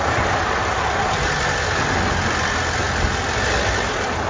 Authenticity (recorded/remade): recorded